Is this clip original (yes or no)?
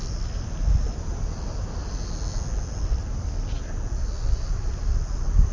yes